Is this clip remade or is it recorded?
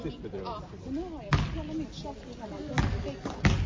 recorded